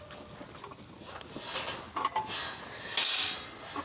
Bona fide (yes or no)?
yes